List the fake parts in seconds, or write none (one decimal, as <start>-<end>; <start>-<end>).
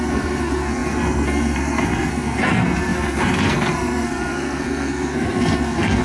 0.0-6.0